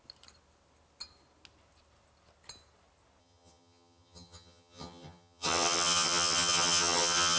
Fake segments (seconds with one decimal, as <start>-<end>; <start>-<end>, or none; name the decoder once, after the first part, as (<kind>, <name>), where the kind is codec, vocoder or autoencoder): 3.2-7.4 (vocoder, HiFi-GAN)